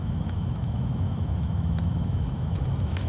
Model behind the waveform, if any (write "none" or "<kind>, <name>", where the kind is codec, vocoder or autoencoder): autoencoder, DAC-VAE